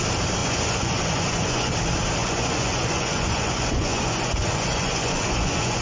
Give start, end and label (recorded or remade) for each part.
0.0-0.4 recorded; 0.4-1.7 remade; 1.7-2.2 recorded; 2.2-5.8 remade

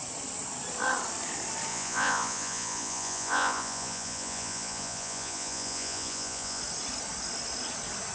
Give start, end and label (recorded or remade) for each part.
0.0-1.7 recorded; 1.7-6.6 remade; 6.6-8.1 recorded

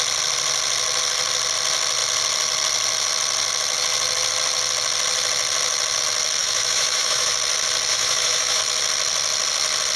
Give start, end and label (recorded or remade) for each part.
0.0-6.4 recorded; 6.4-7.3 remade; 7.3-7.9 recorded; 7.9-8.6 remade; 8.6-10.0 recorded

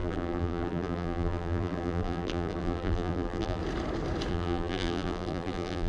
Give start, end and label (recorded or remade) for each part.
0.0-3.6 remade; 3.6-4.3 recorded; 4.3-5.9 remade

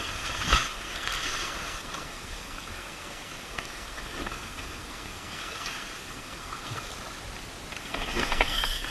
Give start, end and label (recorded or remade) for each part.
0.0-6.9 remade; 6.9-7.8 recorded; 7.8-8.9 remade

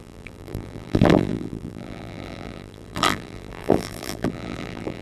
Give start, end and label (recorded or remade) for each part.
0.0-5.0 remade

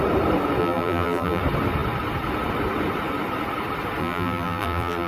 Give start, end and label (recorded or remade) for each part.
0.0-0.6 recorded; 0.6-1.4 remade; 1.4-4.0 recorded; 4.0-5.1 remade

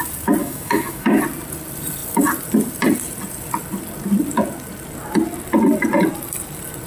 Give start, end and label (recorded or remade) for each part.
0.0-0.4 recorded; 0.4-1.2 remade; 1.2-6.9 recorded